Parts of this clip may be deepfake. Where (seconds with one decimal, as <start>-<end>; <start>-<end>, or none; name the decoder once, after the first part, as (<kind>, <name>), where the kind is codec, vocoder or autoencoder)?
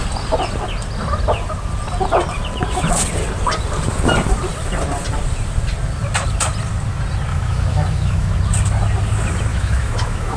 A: 7.3-8.3 (autoencoder, DAC-VAE); 9.5-10.4